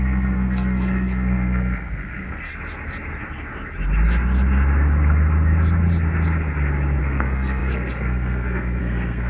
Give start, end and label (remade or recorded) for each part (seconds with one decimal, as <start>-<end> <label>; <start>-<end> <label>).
0.0-2.5 remade; 2.5-7.0 recorded; 7.0-9.3 remade